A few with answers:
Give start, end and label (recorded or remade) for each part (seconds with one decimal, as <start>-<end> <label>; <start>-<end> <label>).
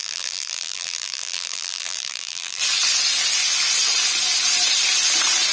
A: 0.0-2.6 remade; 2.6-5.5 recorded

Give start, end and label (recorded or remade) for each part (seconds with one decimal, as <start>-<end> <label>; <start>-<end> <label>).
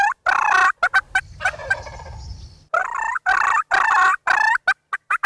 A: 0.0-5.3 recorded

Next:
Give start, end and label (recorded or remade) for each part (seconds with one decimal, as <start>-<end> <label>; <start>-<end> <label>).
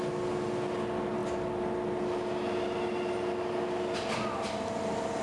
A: 0.0-5.2 recorded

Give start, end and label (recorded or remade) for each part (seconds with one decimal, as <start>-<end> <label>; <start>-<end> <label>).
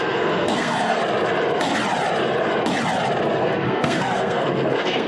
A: 0.0-1.0 remade; 1.0-3.4 recorded; 3.4-5.1 remade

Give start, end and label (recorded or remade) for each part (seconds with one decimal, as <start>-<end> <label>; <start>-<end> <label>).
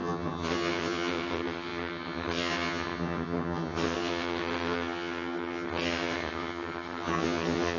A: 0.0-7.8 remade